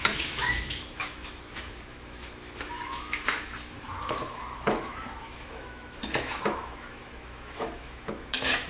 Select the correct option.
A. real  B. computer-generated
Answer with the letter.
B